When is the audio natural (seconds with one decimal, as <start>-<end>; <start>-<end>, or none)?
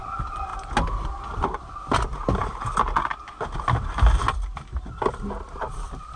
0.0-6.2